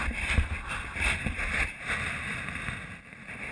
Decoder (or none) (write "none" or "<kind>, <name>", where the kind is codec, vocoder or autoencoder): none